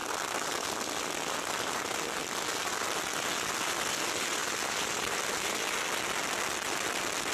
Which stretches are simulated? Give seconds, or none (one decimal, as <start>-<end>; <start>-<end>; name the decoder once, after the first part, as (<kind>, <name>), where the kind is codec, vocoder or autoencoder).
none